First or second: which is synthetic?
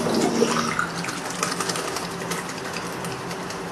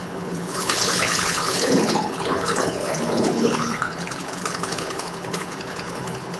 second